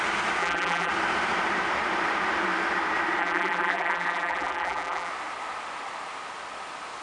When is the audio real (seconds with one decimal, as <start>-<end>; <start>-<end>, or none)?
0.0-0.4; 0.9-3.2; 5.1-7.0